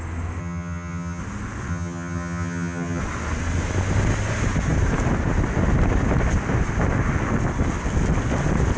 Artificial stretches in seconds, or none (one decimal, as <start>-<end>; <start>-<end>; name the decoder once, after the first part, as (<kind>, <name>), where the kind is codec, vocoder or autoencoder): 0.4-1.2 (vocoder, HiFi-GAN); 1.7-3.0